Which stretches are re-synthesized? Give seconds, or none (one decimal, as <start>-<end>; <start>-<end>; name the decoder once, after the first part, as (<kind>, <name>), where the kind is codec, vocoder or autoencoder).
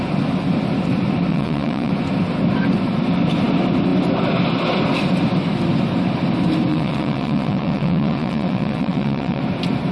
1.3-1.9 (vocoder, WaveNeXt); 6.7-9.4